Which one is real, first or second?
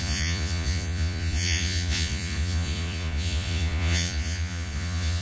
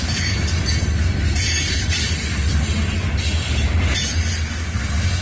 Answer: second